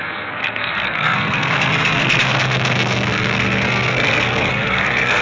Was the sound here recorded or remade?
remade